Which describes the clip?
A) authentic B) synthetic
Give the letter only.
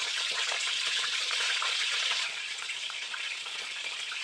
B